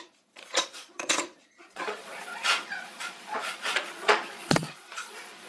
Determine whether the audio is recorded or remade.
remade